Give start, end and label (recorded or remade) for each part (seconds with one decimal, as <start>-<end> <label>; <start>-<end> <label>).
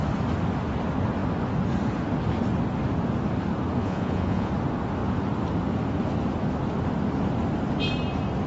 0.0-3.8 recorded; 3.8-4.5 remade; 4.5-8.5 recorded